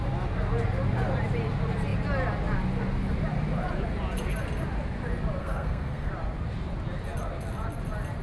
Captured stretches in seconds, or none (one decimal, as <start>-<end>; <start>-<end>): 0.0-5.4; 6.1-8.2